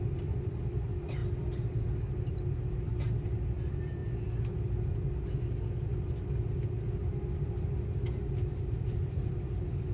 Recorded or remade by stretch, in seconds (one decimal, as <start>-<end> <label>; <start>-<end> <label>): 0.0-1.2 remade; 1.2-3.1 recorded; 3.1-4.0 remade; 4.0-8.6 recorded; 8.6-9.9 remade